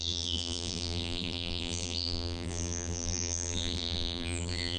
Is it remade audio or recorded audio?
remade